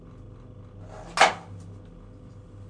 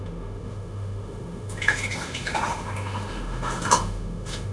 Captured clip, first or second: first